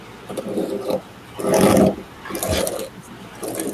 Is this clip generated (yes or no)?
no